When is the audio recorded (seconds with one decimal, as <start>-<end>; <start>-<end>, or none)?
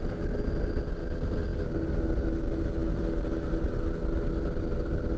0.0-5.2